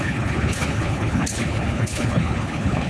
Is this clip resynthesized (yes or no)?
yes